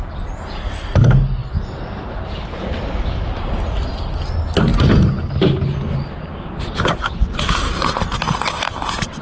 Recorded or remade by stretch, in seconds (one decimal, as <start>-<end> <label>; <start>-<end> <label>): 0.0-9.2 recorded

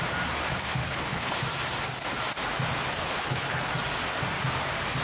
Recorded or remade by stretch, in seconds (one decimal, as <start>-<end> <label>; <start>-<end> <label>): 0.0-0.5 recorded; 0.5-1.4 remade; 1.4-3.0 recorded; 3.0-3.7 remade; 3.7-5.0 recorded

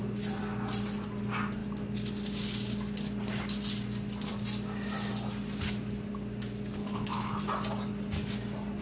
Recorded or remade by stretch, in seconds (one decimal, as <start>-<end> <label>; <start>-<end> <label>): 0.0-6.8 recorded; 6.8-7.4 remade; 7.4-8.8 recorded

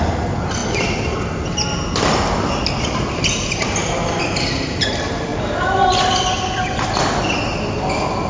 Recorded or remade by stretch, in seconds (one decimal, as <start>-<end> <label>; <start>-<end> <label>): 0.0-8.3 recorded

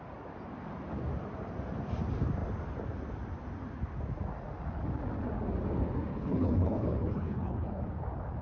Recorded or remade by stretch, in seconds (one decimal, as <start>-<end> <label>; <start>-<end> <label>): 0.0-6.1 recorded; 6.1-7.8 remade; 7.8-8.4 recorded

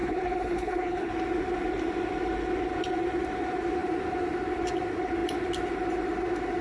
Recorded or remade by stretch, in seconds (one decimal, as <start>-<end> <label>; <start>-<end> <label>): 0.0-1.1 remade; 1.1-6.6 recorded

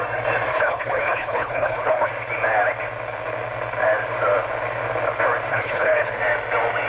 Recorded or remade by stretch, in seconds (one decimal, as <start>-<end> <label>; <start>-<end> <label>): 0.0-0.5 recorded; 0.5-2.1 remade; 2.1-5.5 recorded; 5.5-6.1 remade; 6.1-6.9 recorded